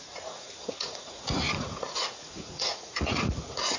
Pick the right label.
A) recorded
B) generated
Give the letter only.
B